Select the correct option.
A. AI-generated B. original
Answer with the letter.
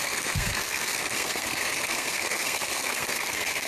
A